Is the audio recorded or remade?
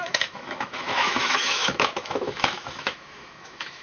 remade